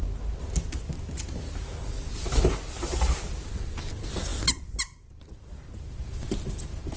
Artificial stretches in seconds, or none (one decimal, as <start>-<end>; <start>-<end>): none

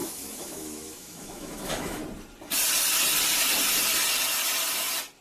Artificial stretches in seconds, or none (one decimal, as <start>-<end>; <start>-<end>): 0.0-2.0

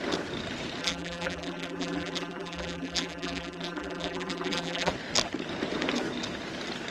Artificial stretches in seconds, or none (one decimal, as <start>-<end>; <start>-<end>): 0.8-4.9

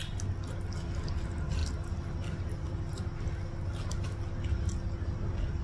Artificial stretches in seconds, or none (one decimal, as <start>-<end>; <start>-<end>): none